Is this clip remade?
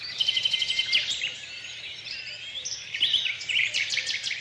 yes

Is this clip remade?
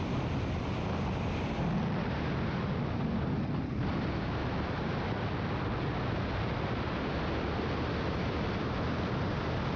no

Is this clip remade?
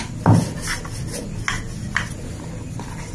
no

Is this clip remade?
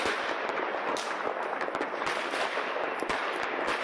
no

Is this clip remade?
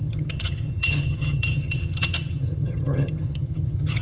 yes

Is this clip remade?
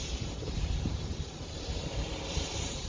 yes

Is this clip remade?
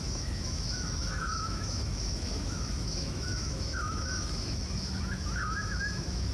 yes